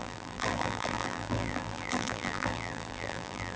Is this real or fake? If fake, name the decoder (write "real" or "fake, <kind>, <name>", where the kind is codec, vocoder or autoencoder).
fake, vocoder, BigVGAN v2